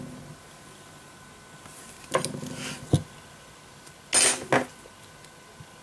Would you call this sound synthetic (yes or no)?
no